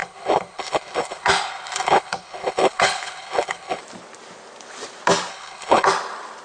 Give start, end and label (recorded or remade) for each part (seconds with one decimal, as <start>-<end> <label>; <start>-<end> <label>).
0.0-3.8 remade; 3.8-5.3 recorded; 5.3-5.9 remade; 5.9-6.4 recorded